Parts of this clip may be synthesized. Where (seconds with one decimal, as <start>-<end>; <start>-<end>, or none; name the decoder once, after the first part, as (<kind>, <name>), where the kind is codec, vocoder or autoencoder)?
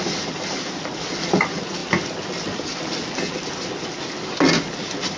none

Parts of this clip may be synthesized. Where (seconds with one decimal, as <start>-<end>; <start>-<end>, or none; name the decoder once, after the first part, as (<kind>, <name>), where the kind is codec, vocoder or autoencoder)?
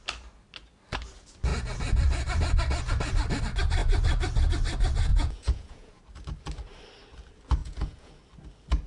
5.1-6.0 (vocoder, Vocos); 7.6-8.1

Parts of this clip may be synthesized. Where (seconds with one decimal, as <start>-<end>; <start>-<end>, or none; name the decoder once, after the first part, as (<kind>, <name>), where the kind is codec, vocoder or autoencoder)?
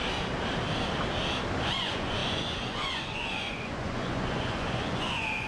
1.6-5.5 (vocoder, Vocos)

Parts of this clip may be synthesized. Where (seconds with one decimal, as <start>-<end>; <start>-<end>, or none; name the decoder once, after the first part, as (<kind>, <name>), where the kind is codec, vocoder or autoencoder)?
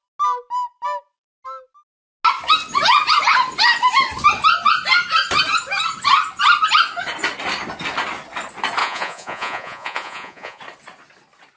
8.8-10.6 (vocoder, Vocos)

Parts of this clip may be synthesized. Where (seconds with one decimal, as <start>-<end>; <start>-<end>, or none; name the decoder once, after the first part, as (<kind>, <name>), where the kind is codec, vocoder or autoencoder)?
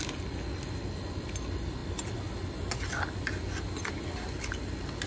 none